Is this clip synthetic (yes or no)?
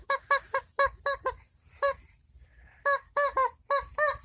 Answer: no